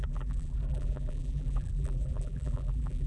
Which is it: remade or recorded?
remade